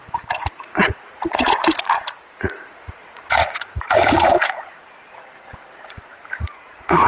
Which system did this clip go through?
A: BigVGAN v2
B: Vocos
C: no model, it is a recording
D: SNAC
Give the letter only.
B